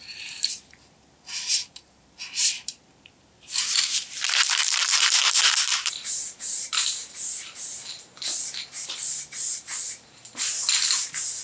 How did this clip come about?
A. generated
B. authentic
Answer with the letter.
A